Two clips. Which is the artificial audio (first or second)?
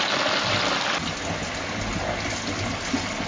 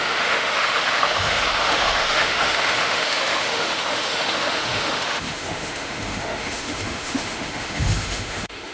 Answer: second